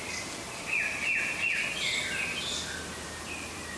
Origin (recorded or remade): recorded